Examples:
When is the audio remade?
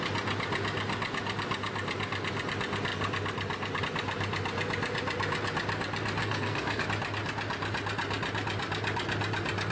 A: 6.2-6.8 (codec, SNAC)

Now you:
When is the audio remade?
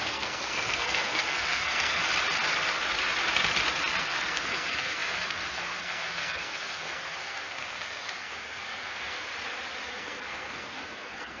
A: 0.0-2.0 (codec, SNAC); 4.0-9.3; 9.9-11.4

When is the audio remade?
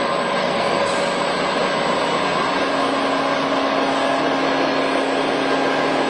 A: 0.4-0.9 (codec, SNAC)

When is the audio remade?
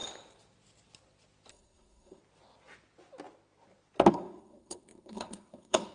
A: 1.5-2.2 (codec, SNAC); 4.1-5.9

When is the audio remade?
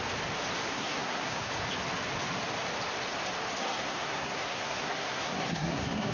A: 0.7-1.5 (codec, SNAC); 3.6-6.1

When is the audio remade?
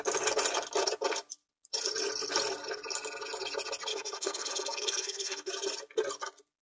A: 3.9-5.5 (codec, SNAC)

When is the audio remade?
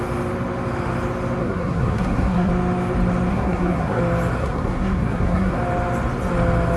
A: 1.4-2.5 (codec, SNAC); 3.3-4.0; 4.4-5.6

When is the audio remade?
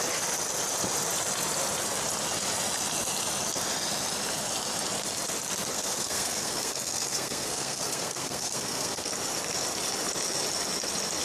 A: 5.7-9.1 (codec, SNAC)